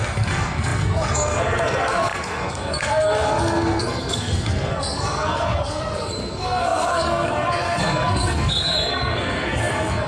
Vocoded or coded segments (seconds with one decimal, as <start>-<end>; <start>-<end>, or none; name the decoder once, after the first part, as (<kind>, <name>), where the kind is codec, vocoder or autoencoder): 0.0-10.1 (codec, SNAC)